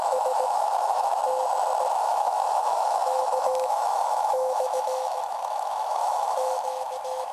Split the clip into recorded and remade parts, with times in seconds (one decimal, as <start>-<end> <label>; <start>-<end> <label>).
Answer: 0.0-1.2 remade; 1.2-1.9 recorded; 1.9-7.3 remade